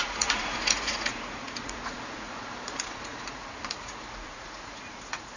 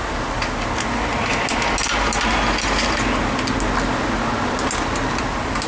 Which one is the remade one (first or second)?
first